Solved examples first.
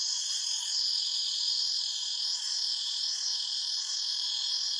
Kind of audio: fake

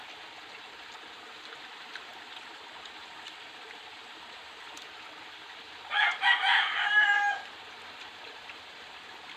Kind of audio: real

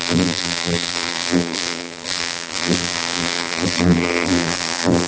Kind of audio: fake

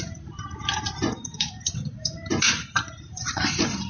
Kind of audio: fake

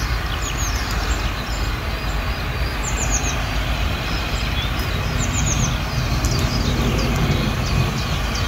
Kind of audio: real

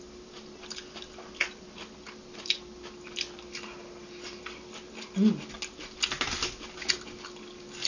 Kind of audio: real